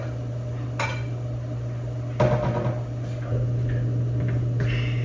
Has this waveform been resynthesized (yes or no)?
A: no